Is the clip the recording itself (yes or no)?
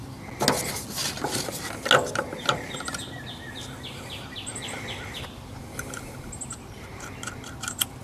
yes